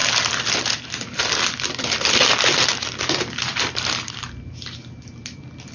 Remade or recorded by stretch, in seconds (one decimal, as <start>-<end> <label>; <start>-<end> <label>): 0.0-5.7 remade